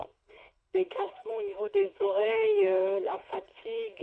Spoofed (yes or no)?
yes